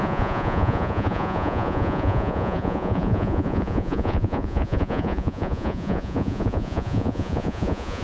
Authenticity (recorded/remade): remade